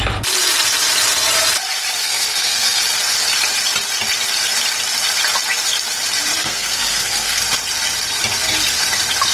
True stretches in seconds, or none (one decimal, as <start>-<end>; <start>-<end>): 0.0-2.0; 2.8-6.4; 7.4-9.3